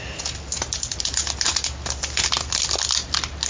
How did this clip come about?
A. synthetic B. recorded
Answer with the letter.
B